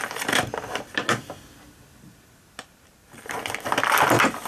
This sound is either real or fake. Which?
real